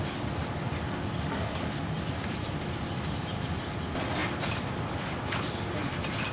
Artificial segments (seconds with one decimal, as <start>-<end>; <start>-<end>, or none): none